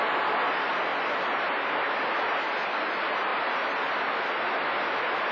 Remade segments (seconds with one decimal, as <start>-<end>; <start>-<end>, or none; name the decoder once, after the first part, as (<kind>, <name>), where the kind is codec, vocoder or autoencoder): none